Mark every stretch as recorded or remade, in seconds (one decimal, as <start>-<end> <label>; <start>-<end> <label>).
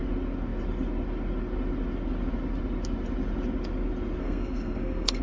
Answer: 0.0-4.2 recorded; 4.2-5.2 remade